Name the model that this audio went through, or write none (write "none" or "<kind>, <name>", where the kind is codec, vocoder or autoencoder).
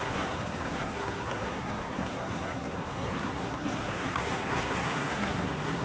codec, SNAC